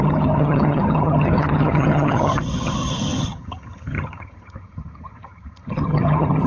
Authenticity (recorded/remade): remade